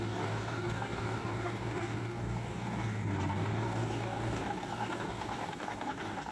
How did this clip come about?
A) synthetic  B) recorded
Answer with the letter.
A